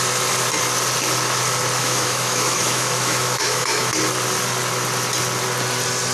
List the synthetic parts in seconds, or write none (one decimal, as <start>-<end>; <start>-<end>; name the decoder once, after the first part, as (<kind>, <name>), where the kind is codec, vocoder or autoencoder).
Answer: 1.8-3.9 (autoencoder, DAC-VAE)

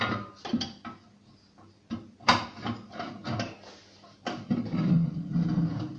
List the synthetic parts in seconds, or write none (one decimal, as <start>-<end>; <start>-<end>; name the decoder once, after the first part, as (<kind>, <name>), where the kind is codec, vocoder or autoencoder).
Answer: none

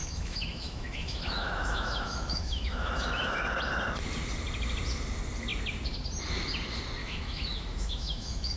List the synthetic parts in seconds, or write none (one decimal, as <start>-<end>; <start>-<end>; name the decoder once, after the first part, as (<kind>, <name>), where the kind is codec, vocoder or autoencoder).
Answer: 0.0-3.4 (autoencoder, DAC-VAE); 7.0-8.6